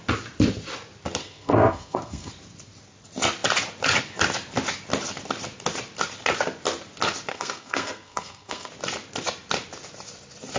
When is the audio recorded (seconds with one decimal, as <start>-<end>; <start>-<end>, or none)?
0.0-1.2; 2.3-7.3; 8.7-10.6